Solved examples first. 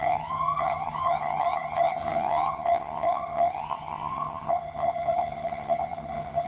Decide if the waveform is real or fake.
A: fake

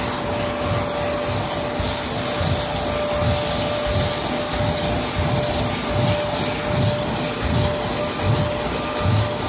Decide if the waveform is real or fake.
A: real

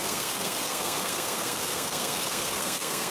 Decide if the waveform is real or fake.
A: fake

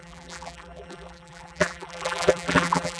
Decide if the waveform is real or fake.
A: fake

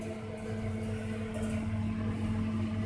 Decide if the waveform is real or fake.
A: real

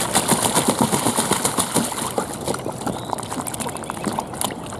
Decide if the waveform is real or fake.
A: real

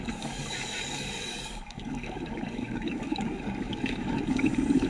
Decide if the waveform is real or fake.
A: fake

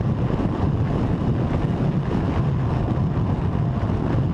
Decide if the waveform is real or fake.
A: real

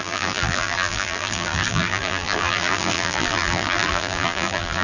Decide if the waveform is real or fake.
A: fake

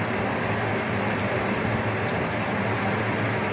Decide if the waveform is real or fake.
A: real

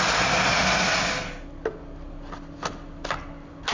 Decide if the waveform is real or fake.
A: real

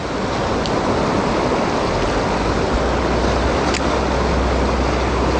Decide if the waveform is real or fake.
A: real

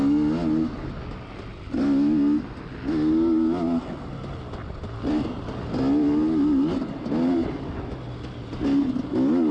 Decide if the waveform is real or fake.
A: real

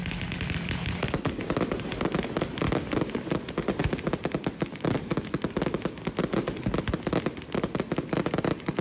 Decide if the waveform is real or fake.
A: real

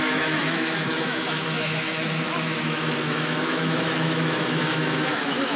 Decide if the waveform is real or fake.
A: fake